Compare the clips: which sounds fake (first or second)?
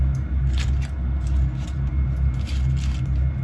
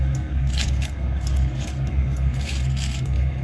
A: second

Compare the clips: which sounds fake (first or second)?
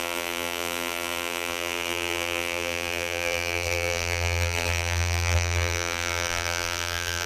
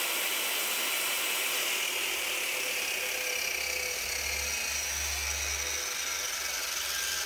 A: first